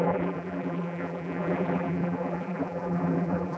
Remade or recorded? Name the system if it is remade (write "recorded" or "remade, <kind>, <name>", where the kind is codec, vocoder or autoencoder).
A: remade, vocoder, BigVGAN v2